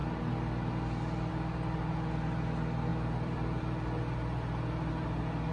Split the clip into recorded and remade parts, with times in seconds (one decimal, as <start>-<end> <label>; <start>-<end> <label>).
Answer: 0.0-2.9 recorded; 2.9-4.9 remade; 4.9-5.5 recorded